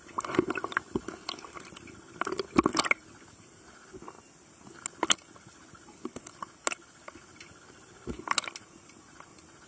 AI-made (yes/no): no